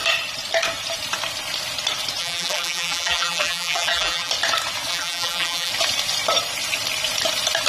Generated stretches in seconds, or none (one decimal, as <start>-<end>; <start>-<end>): 2.2-4.3; 4.9-5.7